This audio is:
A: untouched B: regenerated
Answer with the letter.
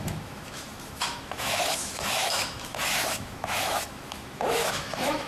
B